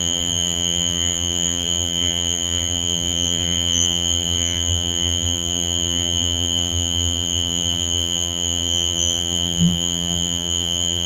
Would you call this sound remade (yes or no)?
yes